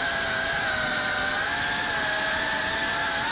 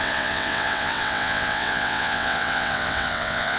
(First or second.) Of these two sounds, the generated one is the second